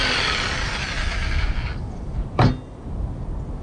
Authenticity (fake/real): real